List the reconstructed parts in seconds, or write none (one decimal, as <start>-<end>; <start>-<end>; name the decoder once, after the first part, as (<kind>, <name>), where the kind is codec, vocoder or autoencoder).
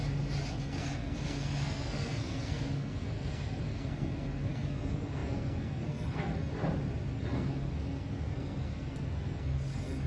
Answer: 0.5-6.5 (codec, SNAC); 7.1-10.1